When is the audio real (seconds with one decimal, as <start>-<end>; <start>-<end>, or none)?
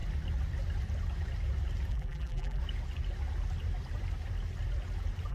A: 0.0-1.9; 2.6-5.3